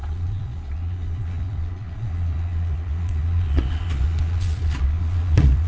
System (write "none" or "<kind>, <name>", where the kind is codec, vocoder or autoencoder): vocoder, Vocos